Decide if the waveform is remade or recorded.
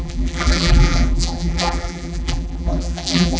remade